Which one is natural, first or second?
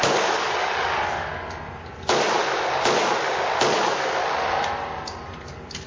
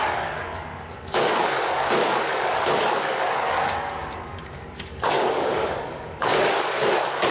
first